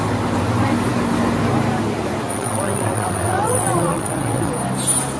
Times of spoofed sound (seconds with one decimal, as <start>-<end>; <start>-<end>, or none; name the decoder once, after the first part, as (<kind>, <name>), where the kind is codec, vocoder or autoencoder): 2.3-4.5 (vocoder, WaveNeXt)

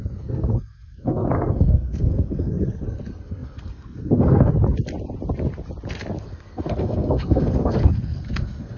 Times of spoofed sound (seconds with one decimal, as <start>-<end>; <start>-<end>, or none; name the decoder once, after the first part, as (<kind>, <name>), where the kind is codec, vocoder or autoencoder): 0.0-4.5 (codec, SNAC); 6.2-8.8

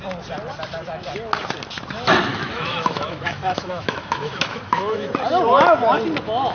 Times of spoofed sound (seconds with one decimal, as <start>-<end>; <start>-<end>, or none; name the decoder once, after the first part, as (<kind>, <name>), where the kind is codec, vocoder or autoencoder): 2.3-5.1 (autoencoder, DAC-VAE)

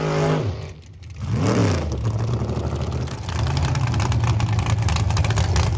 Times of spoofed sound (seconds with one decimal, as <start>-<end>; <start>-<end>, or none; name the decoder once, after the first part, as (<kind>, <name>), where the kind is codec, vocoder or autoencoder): none

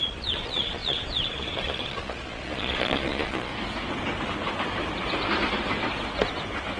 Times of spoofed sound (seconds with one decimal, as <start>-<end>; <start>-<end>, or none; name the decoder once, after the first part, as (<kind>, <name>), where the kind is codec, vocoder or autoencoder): 0.0-3.5 (vocoder, Vocos)